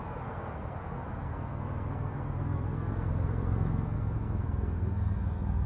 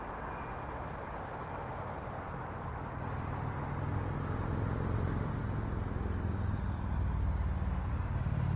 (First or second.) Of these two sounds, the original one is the second